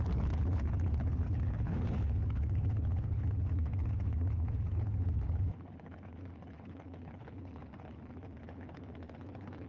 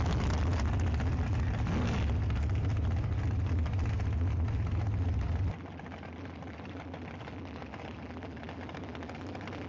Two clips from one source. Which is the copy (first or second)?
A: first